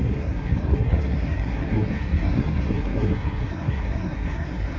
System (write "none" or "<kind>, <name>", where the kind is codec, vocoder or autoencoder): codec, SNAC